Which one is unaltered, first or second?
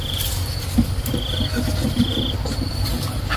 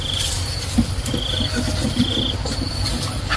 first